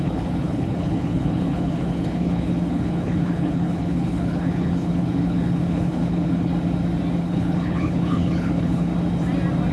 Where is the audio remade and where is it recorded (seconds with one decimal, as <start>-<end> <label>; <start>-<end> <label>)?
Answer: 0.0-6.5 remade; 6.5-7.2 recorded; 7.2-8.9 remade; 8.9-9.7 recorded